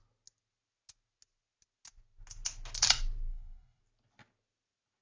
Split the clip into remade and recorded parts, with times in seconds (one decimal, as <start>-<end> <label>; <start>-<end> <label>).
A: 0.0-3.3 recorded; 3.3-3.8 remade; 3.8-5.0 recorded